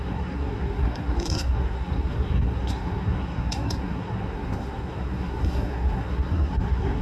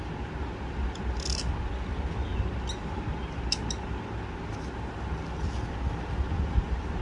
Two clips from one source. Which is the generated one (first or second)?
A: first